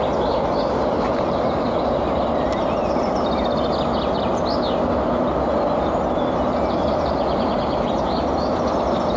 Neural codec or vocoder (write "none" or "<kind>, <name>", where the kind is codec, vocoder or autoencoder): none